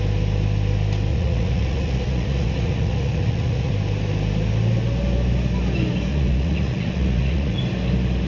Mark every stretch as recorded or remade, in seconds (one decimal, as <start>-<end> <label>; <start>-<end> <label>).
0.0-1.1 recorded; 1.1-3.7 remade; 3.7-6.1 recorded; 6.1-7.6 remade; 7.6-8.3 recorded